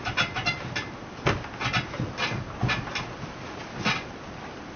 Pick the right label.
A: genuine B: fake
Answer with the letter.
A